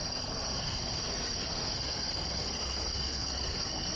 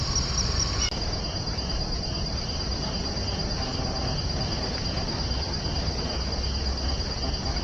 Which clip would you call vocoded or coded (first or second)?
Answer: first